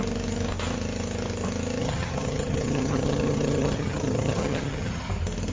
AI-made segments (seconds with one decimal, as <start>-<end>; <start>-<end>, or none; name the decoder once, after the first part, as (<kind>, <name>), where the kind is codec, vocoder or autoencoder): 1.8-5.1 (vocoder, HiFi-GAN)

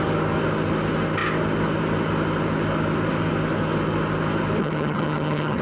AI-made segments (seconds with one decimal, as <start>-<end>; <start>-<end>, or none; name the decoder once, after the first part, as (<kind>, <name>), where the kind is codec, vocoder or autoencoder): 4.6-5.6 (vocoder, HiFi-GAN)

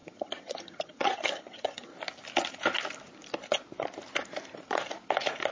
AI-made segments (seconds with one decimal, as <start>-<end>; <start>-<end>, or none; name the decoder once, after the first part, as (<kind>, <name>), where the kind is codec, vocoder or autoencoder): 0.0-1.9 (vocoder, HiFi-GAN)

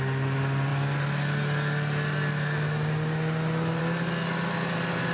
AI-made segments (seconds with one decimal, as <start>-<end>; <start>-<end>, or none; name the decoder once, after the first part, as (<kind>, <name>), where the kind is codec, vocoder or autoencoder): none

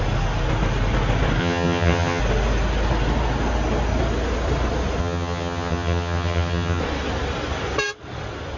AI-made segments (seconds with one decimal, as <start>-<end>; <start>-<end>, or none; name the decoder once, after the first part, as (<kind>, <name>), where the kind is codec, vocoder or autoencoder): 1.4-2.2 (vocoder, HiFi-GAN); 5.0-6.8

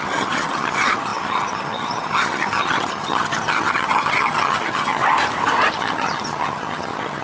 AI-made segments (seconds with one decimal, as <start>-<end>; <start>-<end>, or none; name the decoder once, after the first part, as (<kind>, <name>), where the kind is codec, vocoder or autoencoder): 0.0-5.0 (vocoder, HiFi-GAN); 5.7-7.2

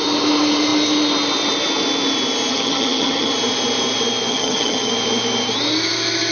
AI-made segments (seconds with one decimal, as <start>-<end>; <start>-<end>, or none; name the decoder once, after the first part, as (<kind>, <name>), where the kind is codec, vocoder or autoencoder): 2.5-3.3 (vocoder, HiFi-GAN); 4.3-4.9

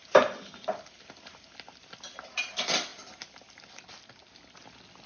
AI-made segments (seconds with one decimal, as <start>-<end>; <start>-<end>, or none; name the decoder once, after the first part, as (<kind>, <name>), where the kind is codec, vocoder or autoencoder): none